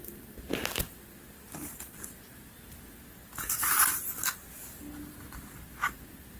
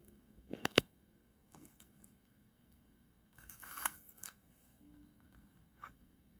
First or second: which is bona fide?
first